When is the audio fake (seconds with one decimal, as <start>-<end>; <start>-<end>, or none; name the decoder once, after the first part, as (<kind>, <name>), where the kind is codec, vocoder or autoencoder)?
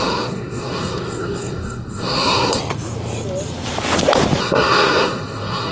0.0-2.6 (codec, SNAC); 4.4-5.7